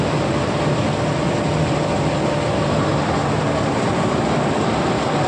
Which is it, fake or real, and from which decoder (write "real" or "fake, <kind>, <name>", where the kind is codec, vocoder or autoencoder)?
real